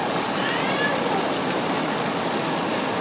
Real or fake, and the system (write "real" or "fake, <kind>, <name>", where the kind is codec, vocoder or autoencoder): real